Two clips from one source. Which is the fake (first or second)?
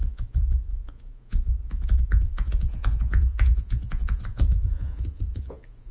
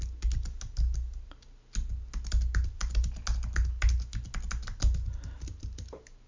first